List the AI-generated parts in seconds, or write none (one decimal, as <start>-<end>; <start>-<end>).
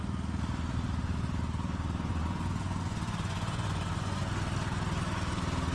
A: 2.1-4.2